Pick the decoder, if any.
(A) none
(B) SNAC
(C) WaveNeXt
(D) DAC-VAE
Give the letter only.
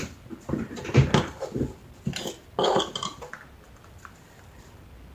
A